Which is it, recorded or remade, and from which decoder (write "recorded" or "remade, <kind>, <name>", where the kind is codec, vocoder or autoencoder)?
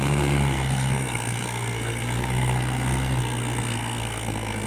remade, codec, SNAC